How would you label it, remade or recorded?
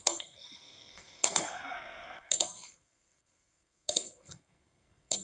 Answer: remade